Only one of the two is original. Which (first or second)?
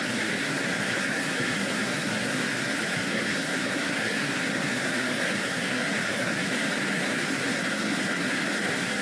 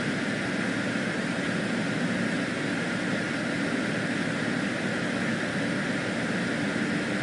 second